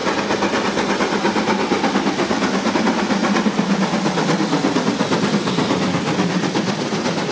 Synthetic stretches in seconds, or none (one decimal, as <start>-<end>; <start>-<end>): 2.7-3.2; 5.5-7.3

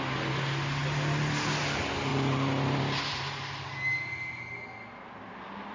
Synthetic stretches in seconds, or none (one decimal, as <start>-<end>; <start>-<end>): 2.1-2.8

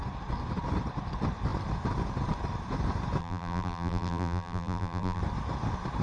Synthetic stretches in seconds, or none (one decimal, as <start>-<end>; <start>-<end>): 3.2-5.2

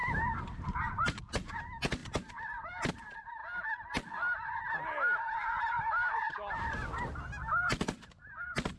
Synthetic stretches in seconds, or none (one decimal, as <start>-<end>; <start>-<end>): 0.0-1.2